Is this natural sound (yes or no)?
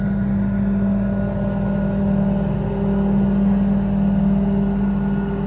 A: yes